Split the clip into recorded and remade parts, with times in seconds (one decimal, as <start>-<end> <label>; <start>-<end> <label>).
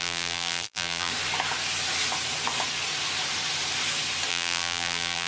0.0-1.1 remade; 1.1-4.3 recorded; 4.3-5.3 remade